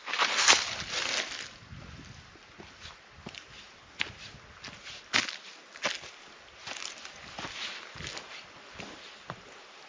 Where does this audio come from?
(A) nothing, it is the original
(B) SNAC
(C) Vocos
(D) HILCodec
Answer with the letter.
A